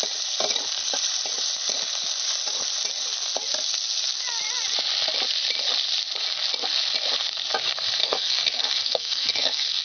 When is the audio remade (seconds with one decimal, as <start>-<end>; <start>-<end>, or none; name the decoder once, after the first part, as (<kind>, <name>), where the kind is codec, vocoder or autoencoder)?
8.0-9.8 (codec, SNAC)